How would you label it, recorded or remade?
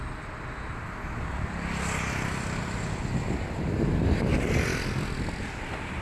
recorded